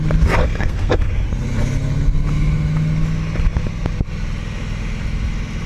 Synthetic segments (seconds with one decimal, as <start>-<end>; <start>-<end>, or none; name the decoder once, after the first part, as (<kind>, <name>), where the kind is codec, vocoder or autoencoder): 0.4-1.1 (codec, SNAC)